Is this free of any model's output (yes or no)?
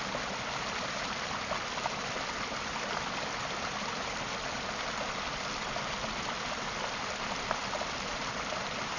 yes